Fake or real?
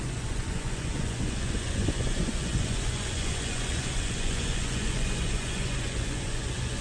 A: fake